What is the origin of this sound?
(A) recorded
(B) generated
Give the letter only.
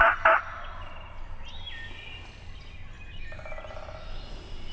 A